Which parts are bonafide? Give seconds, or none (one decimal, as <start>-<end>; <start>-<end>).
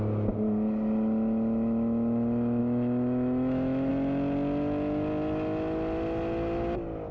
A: 0.0-2.6; 3.9-7.1